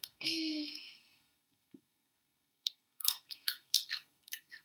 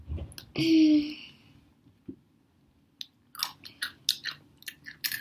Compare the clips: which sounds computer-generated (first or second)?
first